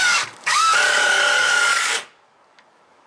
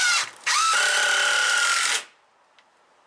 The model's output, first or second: first